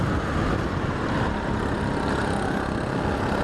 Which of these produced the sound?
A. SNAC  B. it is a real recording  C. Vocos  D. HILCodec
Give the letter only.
B